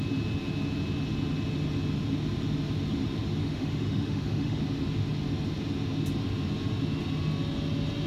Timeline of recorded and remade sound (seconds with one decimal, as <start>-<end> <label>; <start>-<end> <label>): 0.0-3.4 recorded; 3.4-4.6 remade; 4.6-8.1 recorded